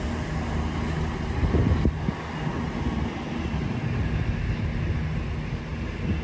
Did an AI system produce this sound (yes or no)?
no